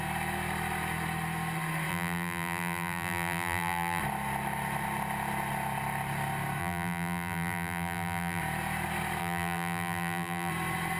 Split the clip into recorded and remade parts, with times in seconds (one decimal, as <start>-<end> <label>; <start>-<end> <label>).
0.0-1.9 recorded; 1.9-4.0 remade; 4.0-6.6 recorded; 6.6-8.4 remade; 8.4-9.2 recorded; 9.2-10.5 remade; 10.5-11.0 recorded